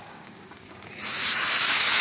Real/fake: fake